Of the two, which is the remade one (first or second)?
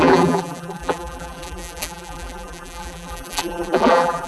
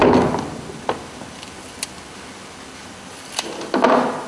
first